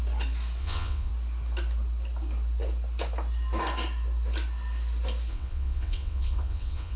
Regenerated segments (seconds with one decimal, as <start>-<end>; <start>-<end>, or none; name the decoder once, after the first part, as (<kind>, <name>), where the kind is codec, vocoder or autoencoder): 0.6-1.1 (vocoder, WaveNeXt); 5.3-7.0